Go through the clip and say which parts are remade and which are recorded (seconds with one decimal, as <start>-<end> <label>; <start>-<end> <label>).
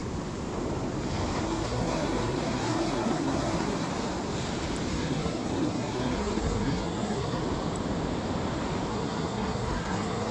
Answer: 0.0-1.4 recorded; 1.4-3.9 remade; 3.9-4.9 recorded; 4.9-7.4 remade; 7.4-8.9 recorded; 8.9-10.3 remade